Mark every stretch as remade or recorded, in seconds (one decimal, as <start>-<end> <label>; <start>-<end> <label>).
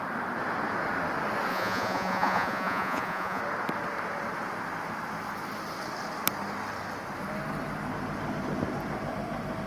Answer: 0.0-1.5 recorded; 1.5-3.4 remade; 3.4-9.7 recorded